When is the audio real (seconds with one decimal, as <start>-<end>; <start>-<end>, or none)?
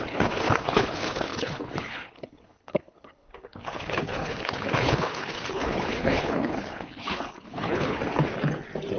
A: 8.0-9.0